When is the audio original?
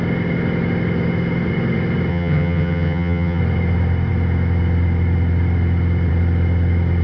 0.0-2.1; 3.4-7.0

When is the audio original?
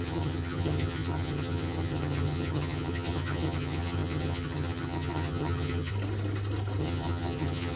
5.9-6.8